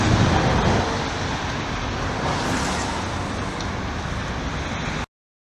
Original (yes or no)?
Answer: yes